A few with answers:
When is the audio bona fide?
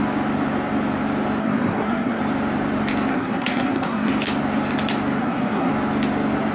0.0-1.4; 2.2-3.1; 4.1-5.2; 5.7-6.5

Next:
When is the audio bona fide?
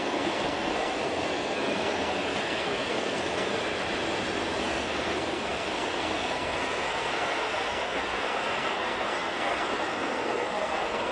3.6-4.6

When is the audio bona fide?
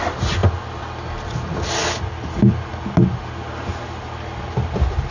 0.0-5.1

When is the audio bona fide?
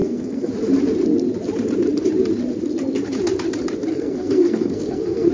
0.5-3.9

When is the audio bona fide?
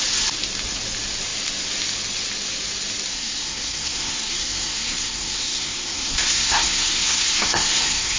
0.0-3.1